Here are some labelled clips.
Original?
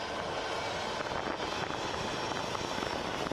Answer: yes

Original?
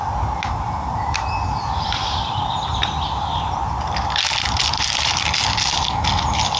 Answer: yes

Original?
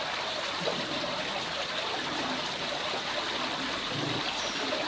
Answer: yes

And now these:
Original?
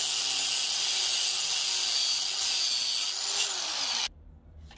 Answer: yes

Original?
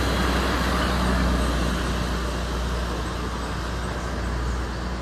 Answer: yes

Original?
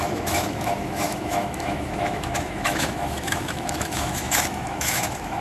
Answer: no